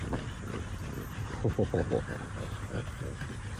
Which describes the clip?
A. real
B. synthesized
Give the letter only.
A